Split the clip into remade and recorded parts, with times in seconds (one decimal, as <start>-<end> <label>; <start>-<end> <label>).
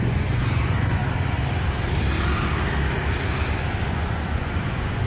0.0-1.0 remade; 1.0-3.8 recorded; 3.8-5.1 remade